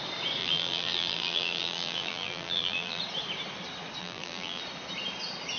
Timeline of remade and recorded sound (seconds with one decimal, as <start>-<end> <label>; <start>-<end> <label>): 0.0-0.4 recorded; 0.4-3.0 remade; 3.0-4.0 recorded; 4.0-4.6 remade; 4.6-5.6 recorded